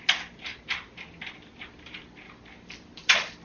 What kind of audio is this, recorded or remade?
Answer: recorded